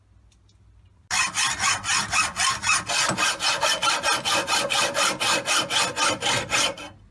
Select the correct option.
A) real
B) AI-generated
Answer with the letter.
A